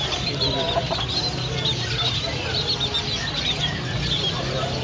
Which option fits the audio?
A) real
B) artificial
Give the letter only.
A